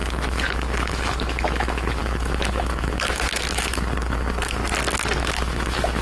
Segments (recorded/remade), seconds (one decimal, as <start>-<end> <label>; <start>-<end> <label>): 0.0-4.6 remade; 4.6-5.2 recorded; 5.2-6.0 remade